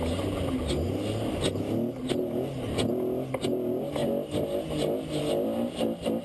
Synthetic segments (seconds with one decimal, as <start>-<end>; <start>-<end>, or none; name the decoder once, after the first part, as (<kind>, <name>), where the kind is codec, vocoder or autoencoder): none